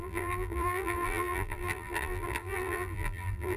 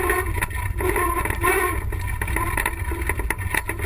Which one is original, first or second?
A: second